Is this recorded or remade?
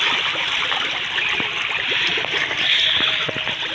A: recorded